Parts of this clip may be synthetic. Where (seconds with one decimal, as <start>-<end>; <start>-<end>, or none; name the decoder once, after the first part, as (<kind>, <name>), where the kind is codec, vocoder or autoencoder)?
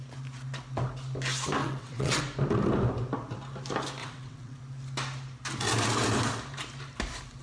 1.6-2.2 (vocoder, WaveNeXt); 4.0-4.6